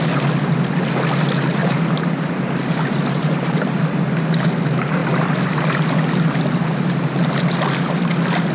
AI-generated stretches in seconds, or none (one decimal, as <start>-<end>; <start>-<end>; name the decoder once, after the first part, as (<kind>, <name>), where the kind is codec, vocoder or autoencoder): 1.6-3.8 (vocoder, BigVGAN v2)